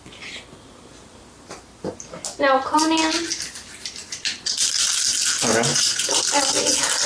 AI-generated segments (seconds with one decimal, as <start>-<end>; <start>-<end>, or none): 5.7-6.2